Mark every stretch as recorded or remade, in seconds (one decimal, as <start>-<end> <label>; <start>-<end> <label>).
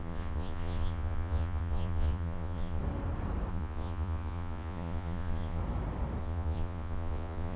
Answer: 0.0-2.8 remade; 2.8-3.5 recorded; 3.5-5.6 remade; 5.6-6.2 recorded; 6.2-7.6 remade